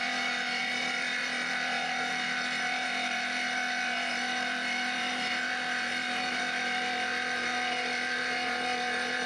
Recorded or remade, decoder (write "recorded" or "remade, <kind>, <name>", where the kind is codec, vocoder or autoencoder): remade, vocoder, BigVGAN v2